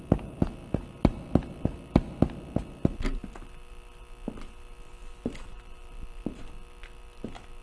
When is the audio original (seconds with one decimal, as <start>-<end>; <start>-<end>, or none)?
0.0-0.6; 2.2-5.0; 6.4-7.6